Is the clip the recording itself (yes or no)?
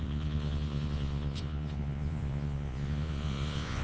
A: no